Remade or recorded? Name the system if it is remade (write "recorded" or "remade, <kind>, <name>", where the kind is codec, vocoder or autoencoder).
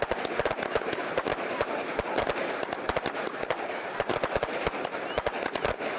recorded